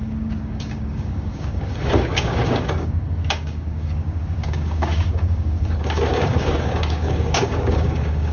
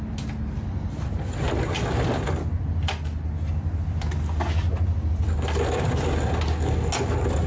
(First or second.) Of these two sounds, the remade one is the first